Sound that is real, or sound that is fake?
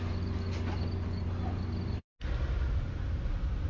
real